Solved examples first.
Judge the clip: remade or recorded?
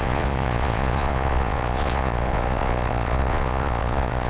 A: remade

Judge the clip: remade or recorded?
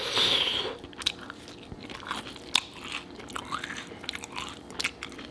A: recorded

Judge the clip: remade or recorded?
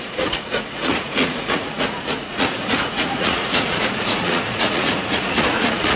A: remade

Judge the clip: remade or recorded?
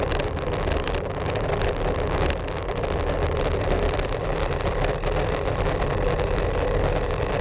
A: recorded